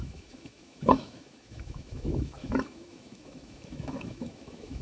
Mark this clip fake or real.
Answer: fake